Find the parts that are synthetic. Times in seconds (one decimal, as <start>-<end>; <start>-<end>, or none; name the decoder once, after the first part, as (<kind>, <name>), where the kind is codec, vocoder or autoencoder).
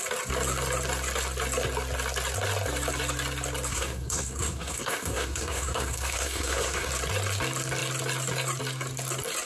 3.7-6.9 (codec, SNAC)